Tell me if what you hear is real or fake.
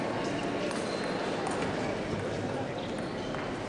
real